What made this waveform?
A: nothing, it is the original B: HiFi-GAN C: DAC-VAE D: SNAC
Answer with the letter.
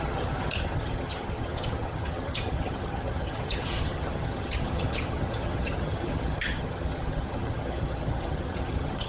B